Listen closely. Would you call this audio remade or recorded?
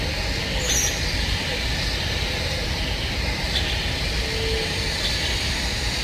recorded